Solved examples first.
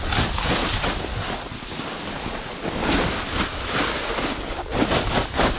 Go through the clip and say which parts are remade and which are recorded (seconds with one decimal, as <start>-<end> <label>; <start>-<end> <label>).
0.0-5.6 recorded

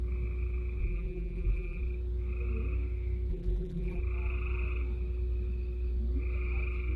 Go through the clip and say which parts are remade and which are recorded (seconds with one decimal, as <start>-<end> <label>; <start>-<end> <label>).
0.0-0.8 recorded; 0.8-1.8 remade; 1.8-3.3 recorded; 3.3-4.0 remade; 4.0-7.0 recorded

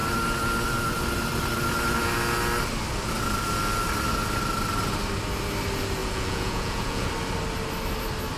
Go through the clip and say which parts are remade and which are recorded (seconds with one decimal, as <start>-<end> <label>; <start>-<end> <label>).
0.0-6.0 recorded; 6.0-7.1 remade; 7.1-8.4 recorded

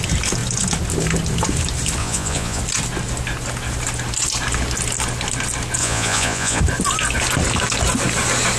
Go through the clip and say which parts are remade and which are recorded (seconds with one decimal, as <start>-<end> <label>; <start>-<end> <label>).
0.0-2.0 recorded; 2.0-2.6 remade; 2.6-5.8 recorded; 5.8-6.6 remade; 6.6-8.6 recorded